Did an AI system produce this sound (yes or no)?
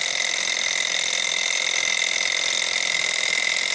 no